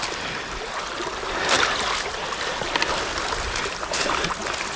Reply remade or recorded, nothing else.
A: recorded